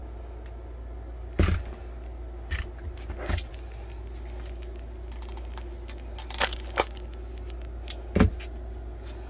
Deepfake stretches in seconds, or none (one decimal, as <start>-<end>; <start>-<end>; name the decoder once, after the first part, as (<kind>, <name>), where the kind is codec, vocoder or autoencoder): none